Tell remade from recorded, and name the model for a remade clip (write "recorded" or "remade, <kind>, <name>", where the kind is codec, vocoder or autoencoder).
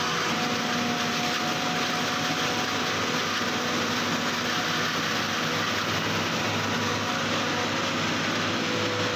recorded